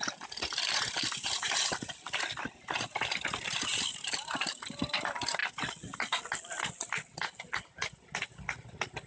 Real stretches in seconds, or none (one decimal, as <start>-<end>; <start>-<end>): 0.0-9.1